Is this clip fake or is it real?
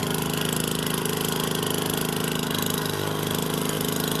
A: real